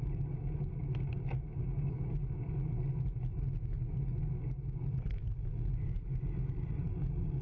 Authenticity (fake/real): real